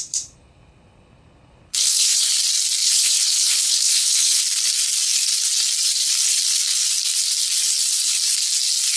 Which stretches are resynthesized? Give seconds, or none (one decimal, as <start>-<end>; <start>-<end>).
1.7-2.3; 2.8-4.4